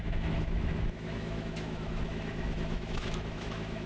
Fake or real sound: fake